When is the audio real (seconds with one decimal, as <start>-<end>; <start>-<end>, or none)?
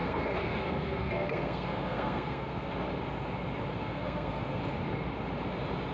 2.7-3.7; 4.6-5.9